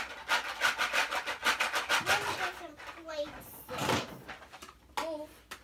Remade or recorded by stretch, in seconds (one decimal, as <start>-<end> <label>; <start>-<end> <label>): 0.0-2.5 recorded; 2.5-3.3 remade; 3.3-3.8 recorded; 3.8-4.9 remade; 4.9-5.6 recorded